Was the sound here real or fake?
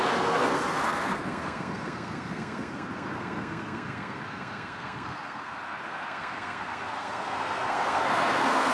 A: fake